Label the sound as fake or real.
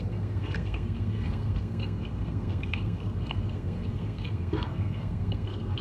fake